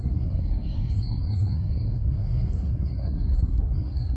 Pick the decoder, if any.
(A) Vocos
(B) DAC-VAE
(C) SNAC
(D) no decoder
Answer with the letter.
C